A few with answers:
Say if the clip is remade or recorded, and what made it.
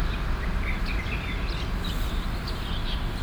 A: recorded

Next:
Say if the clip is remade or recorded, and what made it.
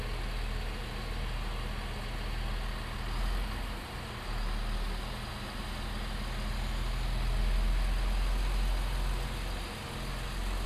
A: recorded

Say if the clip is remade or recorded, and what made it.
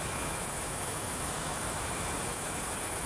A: remade, autoencoder, DAC-VAE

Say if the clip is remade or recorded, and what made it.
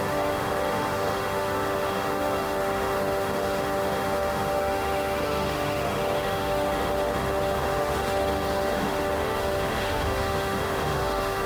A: remade, autoencoder, DAC-VAE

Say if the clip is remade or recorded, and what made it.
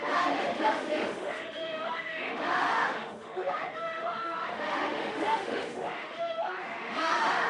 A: remade, autoencoder, DAC-VAE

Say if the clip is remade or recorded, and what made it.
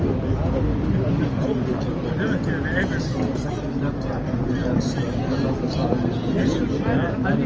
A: recorded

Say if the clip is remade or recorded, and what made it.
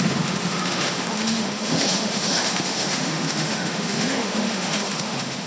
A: remade, autoencoder, DAC-VAE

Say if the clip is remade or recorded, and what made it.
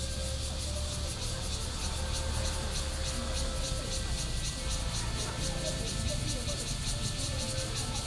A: recorded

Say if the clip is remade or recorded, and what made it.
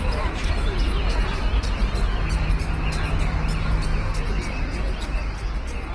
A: recorded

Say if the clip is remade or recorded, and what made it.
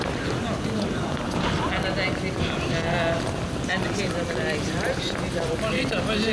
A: recorded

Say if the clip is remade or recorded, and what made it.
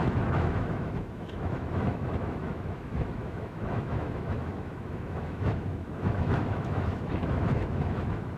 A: remade, autoencoder, DAC-VAE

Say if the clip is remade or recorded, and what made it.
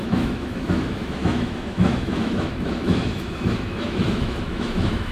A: remade, autoencoder, DAC-VAE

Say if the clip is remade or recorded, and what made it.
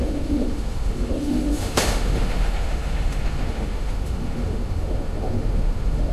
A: remade, autoencoder, DAC-VAE